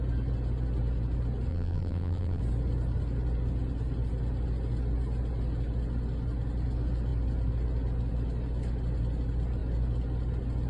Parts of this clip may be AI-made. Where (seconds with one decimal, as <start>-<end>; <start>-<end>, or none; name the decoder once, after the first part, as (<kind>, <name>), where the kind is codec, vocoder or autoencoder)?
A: 1.5-2.4 (vocoder, BigVGAN v2)